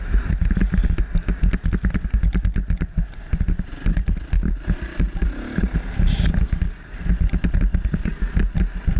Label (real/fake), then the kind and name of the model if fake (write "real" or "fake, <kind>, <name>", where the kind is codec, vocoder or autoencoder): real